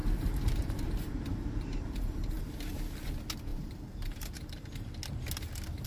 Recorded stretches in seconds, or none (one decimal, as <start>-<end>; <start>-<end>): 2.5-3.5; 4.9-5.9